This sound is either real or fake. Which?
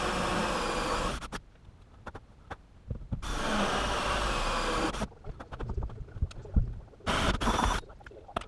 real